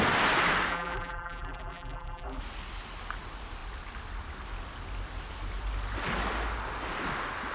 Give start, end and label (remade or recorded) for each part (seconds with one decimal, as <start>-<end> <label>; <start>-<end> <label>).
0.0-0.7 recorded; 0.7-2.4 remade; 2.4-7.5 recorded